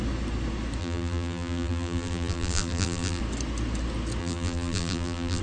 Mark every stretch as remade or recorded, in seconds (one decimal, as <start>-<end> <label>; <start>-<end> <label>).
0.0-0.8 recorded; 0.8-3.2 remade; 3.2-4.2 recorded; 4.2-5.4 remade